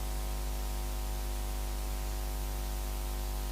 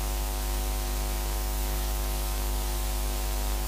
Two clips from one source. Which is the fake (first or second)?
second